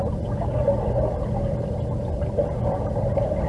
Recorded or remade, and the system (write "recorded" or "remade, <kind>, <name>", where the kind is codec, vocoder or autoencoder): recorded